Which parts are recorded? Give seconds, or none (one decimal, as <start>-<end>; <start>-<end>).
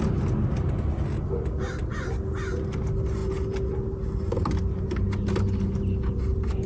0.0-6.7